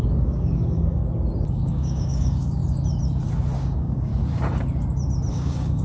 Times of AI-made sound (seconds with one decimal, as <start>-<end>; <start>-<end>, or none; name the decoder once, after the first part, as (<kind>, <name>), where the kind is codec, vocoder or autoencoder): 0.0-1.0 (codec, DAC); 1.5-2.6; 3.6-4.1; 5.3-5.8